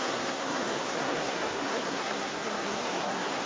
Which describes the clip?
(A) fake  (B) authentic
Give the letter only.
A